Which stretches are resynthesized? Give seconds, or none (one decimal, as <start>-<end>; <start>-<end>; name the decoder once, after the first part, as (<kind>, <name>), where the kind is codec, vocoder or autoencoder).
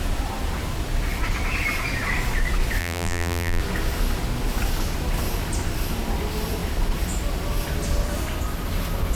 2.8-3.6 (vocoder, BigVGAN v2)